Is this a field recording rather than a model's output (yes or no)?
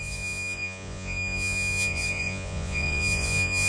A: no